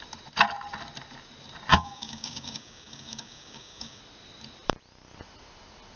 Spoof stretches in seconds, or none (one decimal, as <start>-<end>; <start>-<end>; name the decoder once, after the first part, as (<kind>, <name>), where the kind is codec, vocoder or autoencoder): 1.7-4.0 (codec, DAC)

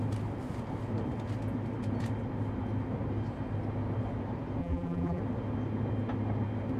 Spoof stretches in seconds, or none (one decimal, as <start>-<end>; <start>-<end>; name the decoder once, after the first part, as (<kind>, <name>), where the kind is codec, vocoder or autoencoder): 4.6-5.2 (vocoder, BigVGAN v2)